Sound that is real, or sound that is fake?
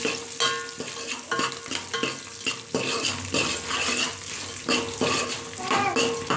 real